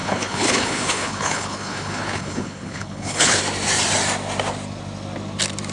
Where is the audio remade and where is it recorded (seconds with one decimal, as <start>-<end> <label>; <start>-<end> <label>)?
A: 0.0-3.4 remade; 3.4-5.7 recorded

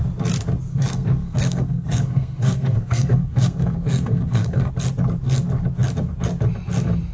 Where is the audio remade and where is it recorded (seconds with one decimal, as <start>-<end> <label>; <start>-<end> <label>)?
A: 0.0-0.7 recorded; 0.7-4.7 remade; 4.7-7.1 recorded

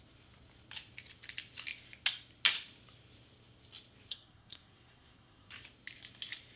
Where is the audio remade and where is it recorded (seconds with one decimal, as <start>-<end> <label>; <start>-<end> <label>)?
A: 0.0-4.1 recorded; 4.1-5.5 remade; 5.5-6.6 recorded

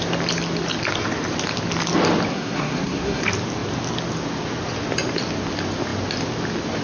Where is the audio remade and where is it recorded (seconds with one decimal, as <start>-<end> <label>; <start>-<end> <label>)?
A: 0.0-2.3 recorded; 2.3-3.2 remade; 3.2-6.8 recorded

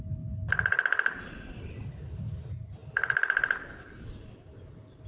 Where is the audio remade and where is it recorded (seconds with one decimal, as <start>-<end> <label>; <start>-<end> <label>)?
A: 0.0-0.4 recorded; 0.4-1.6 remade; 1.6-5.1 recorded